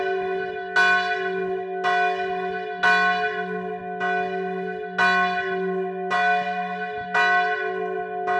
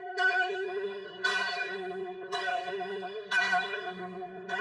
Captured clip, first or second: first